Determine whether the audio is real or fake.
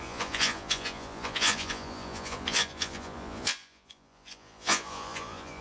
fake